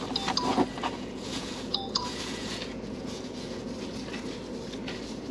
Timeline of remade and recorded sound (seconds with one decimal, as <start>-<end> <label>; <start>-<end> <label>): 0.0-0.5 recorded; 0.5-3.7 remade; 3.7-5.3 recorded